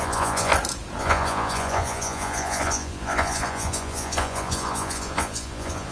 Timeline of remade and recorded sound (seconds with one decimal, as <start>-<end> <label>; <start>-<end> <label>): 0.0-0.5 remade; 0.5-1.0 recorded; 1.0-5.9 remade